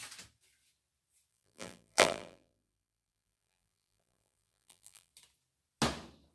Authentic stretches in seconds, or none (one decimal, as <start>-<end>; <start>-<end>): 0.0-1.3; 5.1-6.3